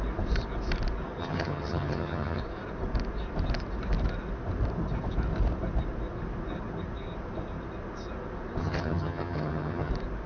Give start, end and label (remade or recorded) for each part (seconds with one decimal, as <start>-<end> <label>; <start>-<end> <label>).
0.0-1.2 recorded; 1.2-2.4 remade; 2.4-8.6 recorded; 8.6-9.9 remade; 9.9-10.3 recorded

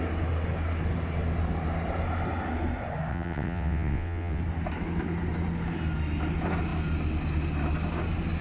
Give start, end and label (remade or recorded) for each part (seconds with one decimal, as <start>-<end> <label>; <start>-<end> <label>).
0.0-3.1 recorded; 3.1-4.4 remade; 4.4-8.4 recorded

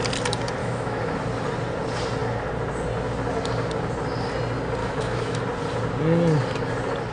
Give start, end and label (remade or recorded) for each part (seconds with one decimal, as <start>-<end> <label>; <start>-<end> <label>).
0.0-0.6 recorded; 0.6-1.2 remade; 1.2-4.8 recorded; 4.8-5.4 remade; 5.4-7.1 recorded

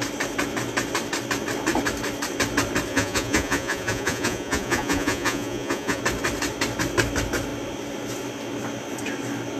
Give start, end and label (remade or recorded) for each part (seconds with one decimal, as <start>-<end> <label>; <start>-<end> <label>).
0.0-2.9 recorded; 2.9-6.0 remade; 6.0-9.6 recorded

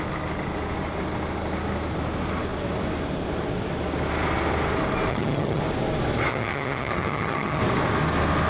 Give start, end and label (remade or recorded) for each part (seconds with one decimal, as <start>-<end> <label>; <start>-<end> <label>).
0.0-5.1 recorded; 5.1-5.6 remade; 5.6-6.3 recorded; 6.3-7.6 remade; 7.6-8.5 recorded

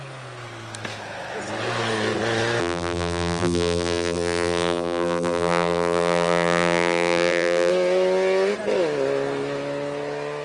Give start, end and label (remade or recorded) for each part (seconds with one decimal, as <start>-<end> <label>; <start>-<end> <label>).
0.0-2.6 recorded; 2.6-7.7 remade; 7.7-10.4 recorded